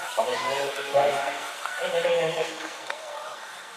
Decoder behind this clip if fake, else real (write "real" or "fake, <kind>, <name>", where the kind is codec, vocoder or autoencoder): fake, codec, SNAC